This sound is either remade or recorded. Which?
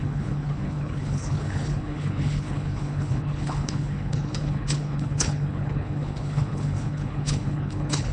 remade